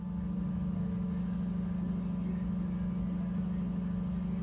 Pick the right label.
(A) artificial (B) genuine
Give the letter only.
B